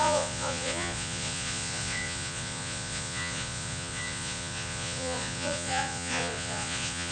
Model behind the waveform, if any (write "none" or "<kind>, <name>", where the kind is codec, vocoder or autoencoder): vocoder, Vocos